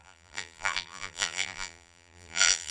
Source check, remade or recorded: remade